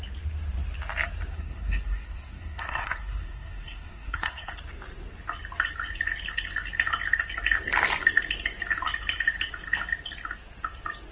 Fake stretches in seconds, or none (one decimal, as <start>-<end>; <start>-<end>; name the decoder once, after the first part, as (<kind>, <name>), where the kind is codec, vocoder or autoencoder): 1.3-4.5 (codec, SNAC)